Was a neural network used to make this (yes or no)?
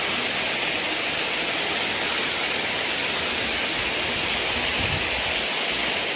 no